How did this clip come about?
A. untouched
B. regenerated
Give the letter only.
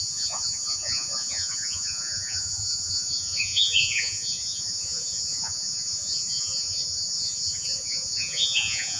B